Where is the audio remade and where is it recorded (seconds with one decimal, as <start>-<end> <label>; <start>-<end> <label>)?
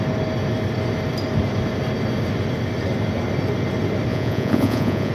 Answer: 0.0-4.1 recorded; 4.1-5.1 remade